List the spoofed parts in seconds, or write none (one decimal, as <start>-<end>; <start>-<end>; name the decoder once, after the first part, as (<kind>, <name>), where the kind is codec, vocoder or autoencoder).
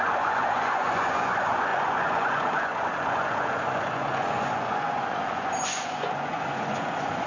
0.0-7.3 (vocoder, Vocos)